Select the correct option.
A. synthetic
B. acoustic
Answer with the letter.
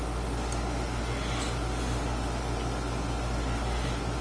B